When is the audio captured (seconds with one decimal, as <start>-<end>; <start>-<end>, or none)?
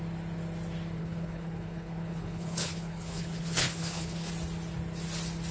0.0-1.0; 4.3-5.5